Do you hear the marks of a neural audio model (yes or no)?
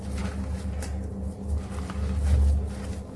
no